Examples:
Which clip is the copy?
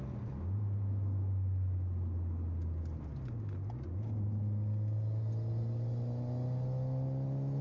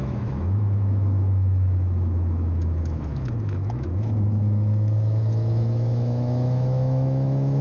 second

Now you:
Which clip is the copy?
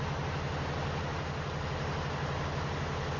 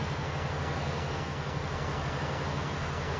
second